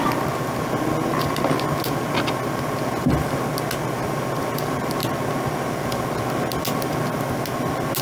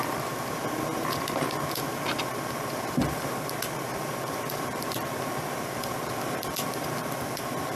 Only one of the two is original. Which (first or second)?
first